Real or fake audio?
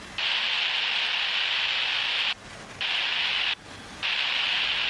real